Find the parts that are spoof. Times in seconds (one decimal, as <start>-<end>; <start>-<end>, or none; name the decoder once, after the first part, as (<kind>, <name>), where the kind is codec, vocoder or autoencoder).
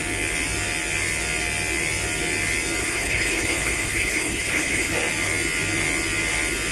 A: 2.8-4.9 (codec, HILCodec)